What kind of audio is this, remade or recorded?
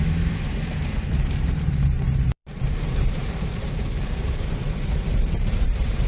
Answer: remade